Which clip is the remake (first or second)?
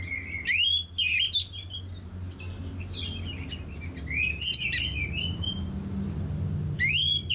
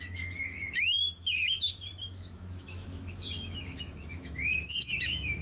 second